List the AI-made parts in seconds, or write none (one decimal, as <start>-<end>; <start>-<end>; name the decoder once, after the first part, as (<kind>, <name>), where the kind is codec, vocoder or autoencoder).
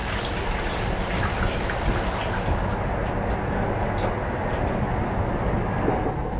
none